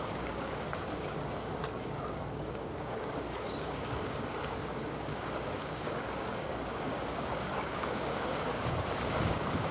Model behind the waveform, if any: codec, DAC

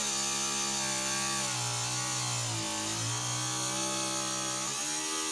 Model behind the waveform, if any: none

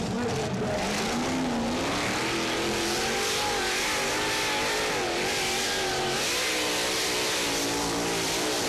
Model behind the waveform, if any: none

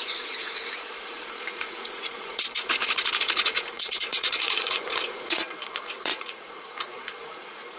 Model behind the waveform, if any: vocoder, Vocos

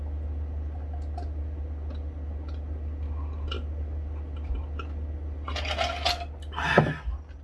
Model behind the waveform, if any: none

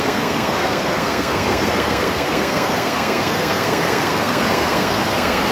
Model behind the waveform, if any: codec, SNAC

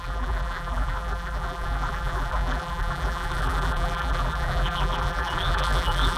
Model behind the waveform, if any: vocoder, BigVGAN v2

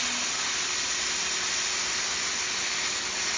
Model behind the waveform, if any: none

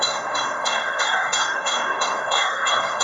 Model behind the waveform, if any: codec, SNAC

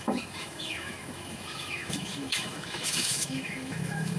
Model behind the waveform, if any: autoencoder, DAC-VAE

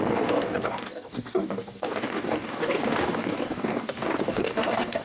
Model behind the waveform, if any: codec, DAC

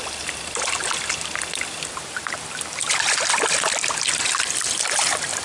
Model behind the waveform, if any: vocoder, BigVGAN v2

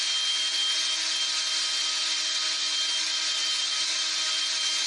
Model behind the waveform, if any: none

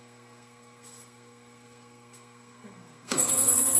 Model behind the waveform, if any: codec, SNAC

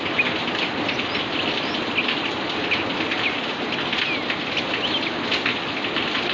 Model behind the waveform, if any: none